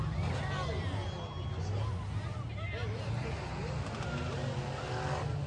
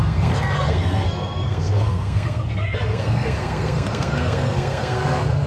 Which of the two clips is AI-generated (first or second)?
second